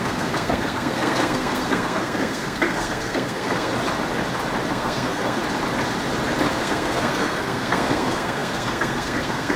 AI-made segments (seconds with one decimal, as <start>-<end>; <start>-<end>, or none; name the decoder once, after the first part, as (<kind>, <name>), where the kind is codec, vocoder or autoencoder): 0.0-3.7 (codec, SNAC); 4.7-5.4; 6.5-9.6